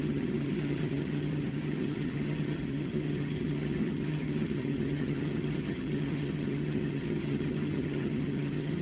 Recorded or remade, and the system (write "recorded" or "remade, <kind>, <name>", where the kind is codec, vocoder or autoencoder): remade, vocoder, HiFi-GAN